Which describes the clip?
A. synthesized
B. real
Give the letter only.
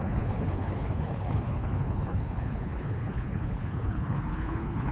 A